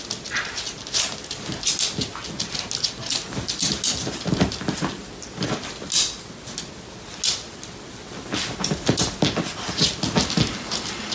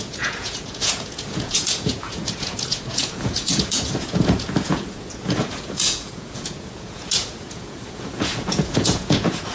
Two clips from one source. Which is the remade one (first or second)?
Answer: second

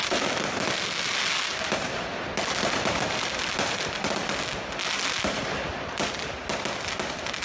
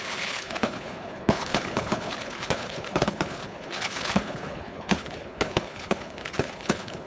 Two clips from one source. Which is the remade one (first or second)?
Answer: second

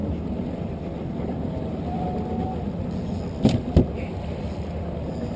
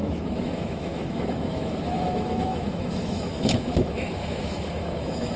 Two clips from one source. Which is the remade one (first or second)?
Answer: second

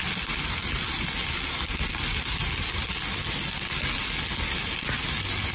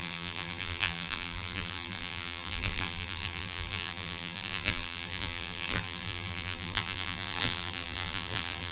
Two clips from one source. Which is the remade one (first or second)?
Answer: second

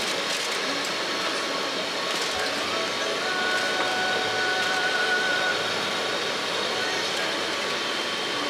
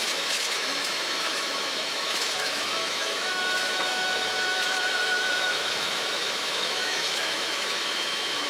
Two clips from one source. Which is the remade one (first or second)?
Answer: second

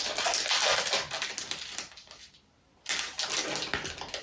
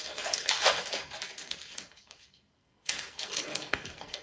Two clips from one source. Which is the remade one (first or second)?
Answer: second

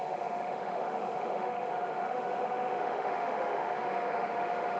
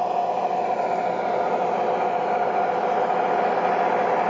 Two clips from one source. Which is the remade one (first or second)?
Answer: first